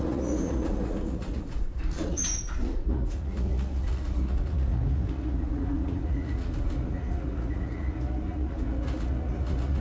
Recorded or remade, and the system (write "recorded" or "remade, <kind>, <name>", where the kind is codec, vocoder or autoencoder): remade, vocoder, Vocos